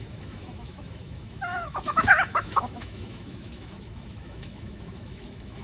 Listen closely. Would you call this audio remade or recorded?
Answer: remade